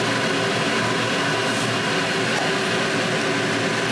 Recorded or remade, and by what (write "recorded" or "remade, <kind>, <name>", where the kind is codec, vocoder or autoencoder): recorded